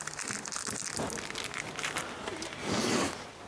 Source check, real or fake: real